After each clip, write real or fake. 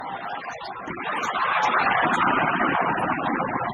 real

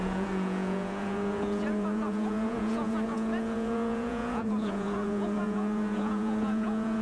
fake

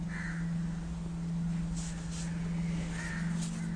real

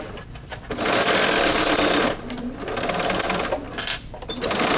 real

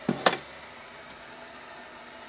real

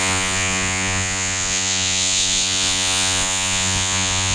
fake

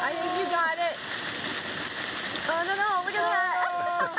real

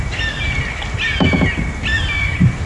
real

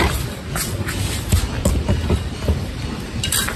real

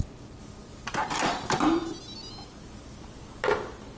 real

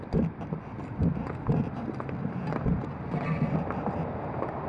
real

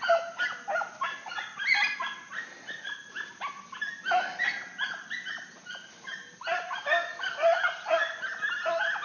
real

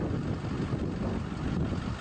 real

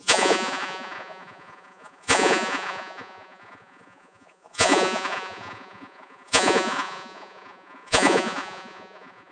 fake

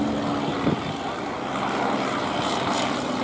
real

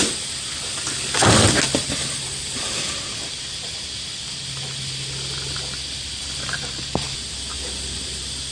real